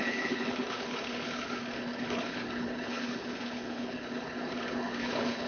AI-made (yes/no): yes